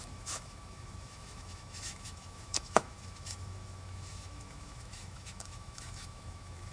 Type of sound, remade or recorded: remade